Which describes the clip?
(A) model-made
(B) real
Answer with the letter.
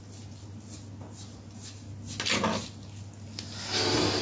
B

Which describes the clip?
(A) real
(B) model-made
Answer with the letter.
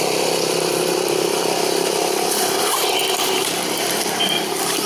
B